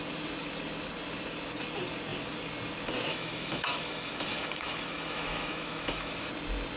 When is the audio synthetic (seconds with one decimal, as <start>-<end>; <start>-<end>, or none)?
3.1-6.3